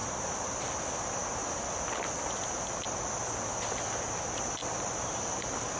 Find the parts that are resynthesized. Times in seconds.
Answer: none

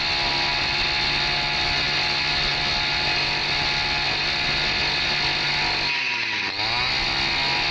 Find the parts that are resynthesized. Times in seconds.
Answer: none

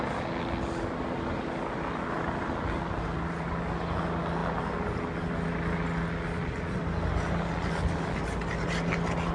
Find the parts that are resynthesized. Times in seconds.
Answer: none

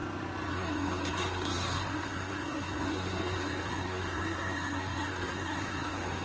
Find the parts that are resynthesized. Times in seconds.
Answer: 0.5-6.2 (codec, SNAC)

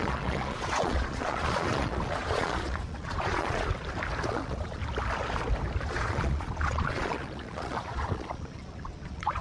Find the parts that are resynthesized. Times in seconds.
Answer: 0.0-3.7 (vocoder, Vocos); 4.3-4.8; 5.9-9.4